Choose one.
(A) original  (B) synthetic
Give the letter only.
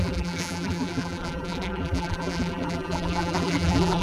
B